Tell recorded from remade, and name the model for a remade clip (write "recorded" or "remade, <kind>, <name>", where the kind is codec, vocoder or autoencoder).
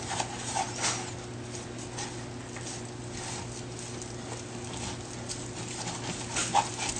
recorded